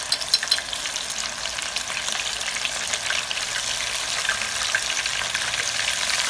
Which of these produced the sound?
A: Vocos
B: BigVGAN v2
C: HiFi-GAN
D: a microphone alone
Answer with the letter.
D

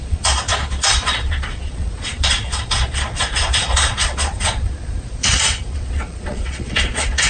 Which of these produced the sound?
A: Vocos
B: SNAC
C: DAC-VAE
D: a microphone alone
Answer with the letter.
A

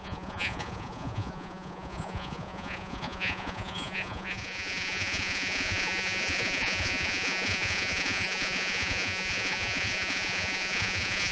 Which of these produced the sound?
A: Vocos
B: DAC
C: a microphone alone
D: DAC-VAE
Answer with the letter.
A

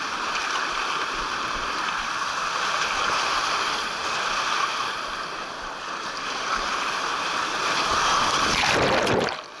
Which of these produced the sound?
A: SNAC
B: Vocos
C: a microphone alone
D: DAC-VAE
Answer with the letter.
C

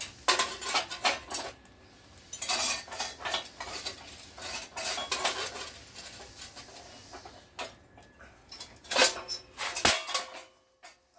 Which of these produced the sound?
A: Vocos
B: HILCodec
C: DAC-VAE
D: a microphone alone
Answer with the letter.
D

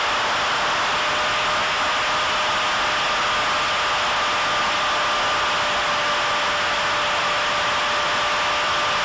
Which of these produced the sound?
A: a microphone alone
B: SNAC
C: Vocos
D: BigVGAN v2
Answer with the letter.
A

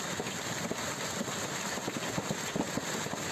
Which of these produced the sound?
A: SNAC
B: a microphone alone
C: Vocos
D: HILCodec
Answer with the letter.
B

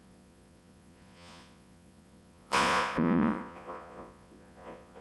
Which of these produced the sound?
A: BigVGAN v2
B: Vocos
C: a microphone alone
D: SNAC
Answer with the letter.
B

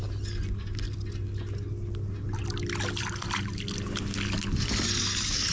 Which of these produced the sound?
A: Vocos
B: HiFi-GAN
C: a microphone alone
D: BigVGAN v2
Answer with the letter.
C